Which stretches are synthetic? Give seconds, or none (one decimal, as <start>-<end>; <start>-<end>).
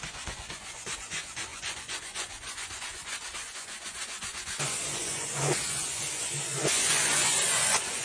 0.0-8.0